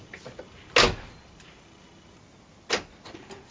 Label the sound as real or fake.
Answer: real